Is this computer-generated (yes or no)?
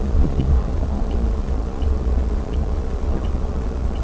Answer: yes